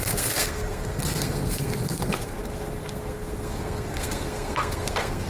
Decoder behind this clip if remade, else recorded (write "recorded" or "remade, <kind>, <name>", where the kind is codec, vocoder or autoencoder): remade, codec, SNAC